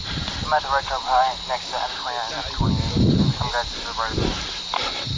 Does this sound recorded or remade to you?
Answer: recorded